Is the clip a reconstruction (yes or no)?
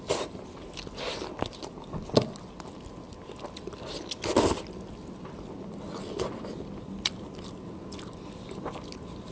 no